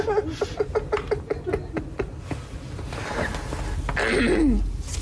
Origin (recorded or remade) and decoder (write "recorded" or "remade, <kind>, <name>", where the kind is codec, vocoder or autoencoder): recorded